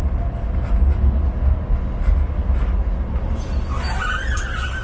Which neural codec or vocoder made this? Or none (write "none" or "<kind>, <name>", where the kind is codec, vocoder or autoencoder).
none